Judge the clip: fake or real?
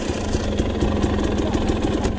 real